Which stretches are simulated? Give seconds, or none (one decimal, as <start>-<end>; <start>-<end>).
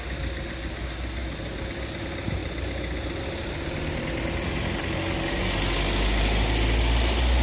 none